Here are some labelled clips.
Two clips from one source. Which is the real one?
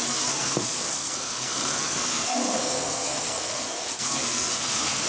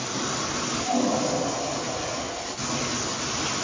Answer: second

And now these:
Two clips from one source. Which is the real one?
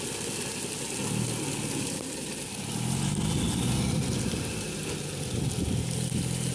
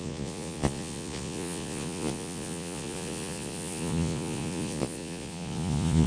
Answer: first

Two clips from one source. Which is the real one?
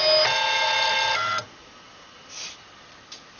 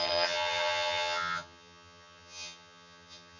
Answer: first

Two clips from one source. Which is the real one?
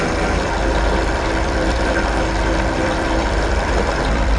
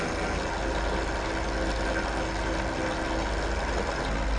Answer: second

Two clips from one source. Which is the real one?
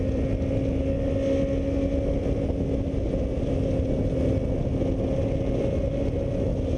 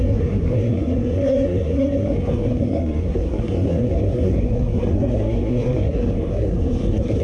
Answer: first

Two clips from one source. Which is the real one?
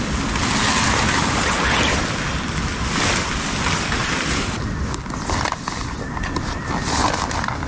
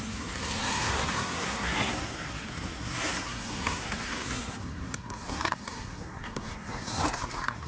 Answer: first